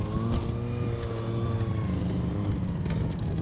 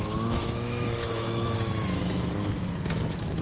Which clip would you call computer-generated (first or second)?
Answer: second